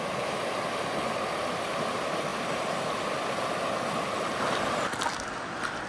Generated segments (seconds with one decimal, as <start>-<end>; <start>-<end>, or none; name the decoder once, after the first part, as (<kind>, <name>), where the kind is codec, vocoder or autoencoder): none